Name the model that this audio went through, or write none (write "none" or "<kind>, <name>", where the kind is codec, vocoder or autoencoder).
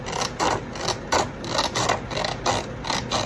none